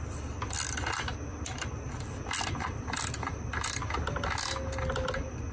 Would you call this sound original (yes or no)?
yes